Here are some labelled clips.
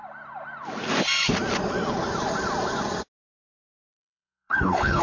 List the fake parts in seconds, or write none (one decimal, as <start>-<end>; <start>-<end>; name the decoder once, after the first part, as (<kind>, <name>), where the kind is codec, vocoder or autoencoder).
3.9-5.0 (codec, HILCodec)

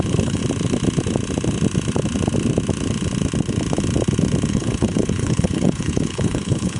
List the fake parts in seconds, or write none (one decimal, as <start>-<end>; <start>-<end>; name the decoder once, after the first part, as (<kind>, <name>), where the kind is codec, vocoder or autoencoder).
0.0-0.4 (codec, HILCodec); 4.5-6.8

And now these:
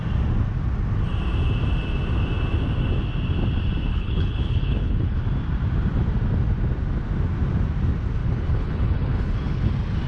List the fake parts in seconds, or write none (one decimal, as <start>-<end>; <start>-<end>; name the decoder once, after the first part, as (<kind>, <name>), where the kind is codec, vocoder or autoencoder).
3.9-5.2 (codec, HILCodec); 8.2-9.7

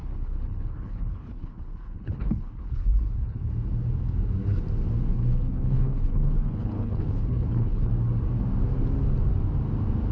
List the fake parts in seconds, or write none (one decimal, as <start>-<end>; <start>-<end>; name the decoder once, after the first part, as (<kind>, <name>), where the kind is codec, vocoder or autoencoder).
0.0-3.5 (codec, HILCodec); 5.1-7.9

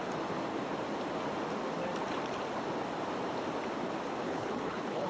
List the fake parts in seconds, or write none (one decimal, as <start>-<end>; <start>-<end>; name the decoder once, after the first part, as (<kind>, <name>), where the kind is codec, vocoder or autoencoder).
4.2-5.1 (codec, HILCodec)

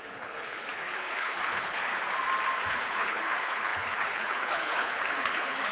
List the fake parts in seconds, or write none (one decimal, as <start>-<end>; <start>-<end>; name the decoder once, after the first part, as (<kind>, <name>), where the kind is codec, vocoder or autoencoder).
0.0-1.9 (codec, HILCodec); 2.7-5.7